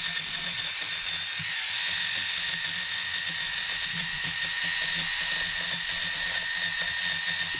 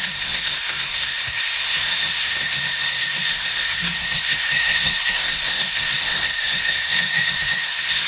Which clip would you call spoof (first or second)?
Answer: second